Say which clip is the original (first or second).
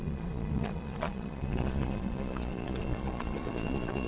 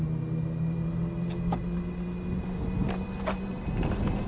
second